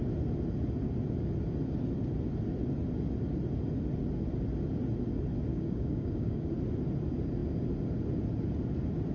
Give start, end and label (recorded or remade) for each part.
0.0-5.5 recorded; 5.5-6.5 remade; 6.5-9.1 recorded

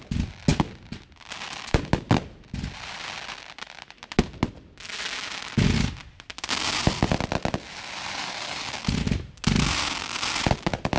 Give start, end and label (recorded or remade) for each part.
0.0-8.2 recorded; 8.2-8.8 remade; 8.8-11.0 recorded

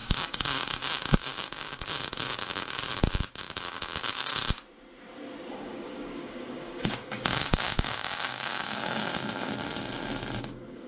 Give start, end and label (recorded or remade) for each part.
0.0-4.3 remade; 4.3-5.5 recorded; 5.5-9.1 remade; 9.1-10.4 recorded; 10.4-10.9 remade